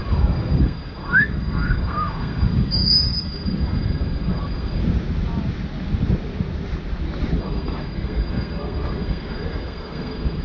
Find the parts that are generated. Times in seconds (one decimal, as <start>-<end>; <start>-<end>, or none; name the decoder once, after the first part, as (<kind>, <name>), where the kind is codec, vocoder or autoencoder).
0.0-4.8 (codec, SNAC); 7.4-10.4